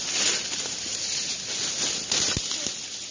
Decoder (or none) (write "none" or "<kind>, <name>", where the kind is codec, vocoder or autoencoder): none